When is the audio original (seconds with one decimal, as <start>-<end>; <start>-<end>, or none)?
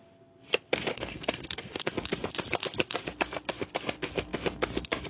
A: 0.0-0.9; 1.9-5.1